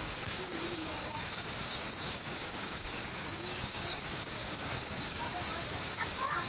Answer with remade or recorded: remade